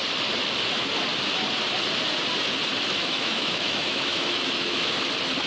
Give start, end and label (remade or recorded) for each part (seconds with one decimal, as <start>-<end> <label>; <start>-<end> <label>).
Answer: 0.0-3.0 recorded; 3.0-5.0 remade; 5.0-5.5 recorded